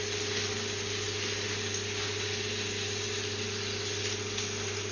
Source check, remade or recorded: recorded